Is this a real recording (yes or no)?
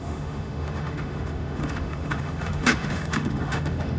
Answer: no